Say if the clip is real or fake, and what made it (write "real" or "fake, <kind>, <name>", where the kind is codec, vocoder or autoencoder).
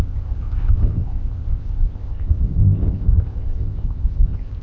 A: fake, codec, ZipCodec